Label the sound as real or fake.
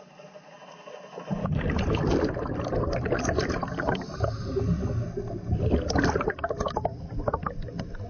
real